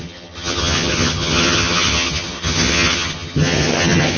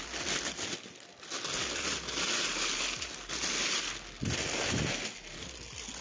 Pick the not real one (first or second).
first